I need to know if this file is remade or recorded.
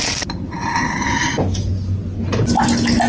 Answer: recorded